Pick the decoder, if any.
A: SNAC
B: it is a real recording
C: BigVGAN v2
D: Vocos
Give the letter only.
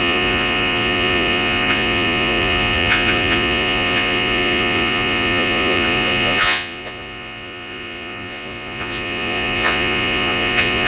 D